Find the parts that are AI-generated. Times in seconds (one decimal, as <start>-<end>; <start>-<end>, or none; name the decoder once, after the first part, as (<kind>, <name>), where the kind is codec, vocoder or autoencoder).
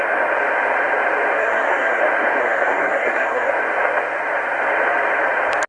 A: 1.4-2.0 (codec, SNAC); 2.4-3.5